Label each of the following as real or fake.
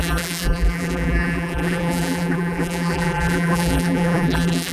fake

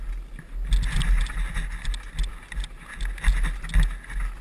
real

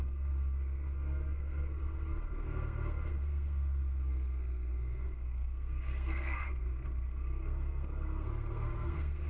fake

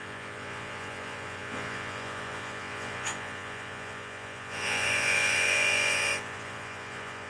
fake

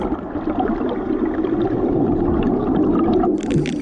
real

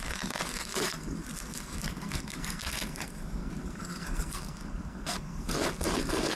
fake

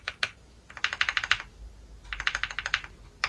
real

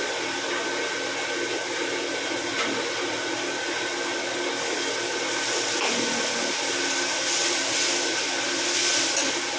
real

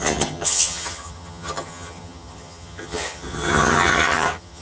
fake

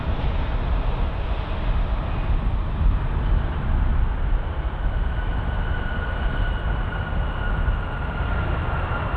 real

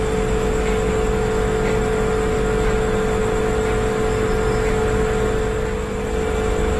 real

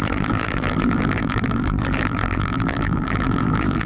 fake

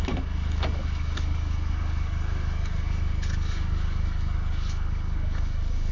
fake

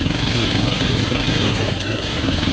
fake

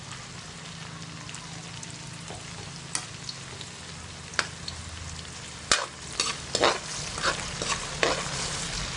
real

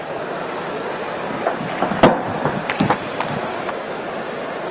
real